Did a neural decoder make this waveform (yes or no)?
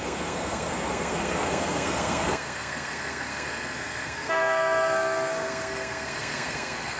yes